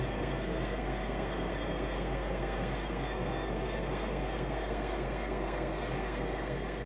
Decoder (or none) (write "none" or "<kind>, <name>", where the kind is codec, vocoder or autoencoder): codec, SNAC